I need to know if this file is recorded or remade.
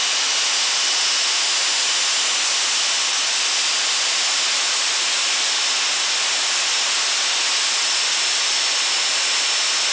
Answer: recorded